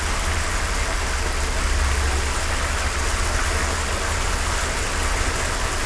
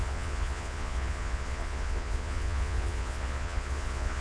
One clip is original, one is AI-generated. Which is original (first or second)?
first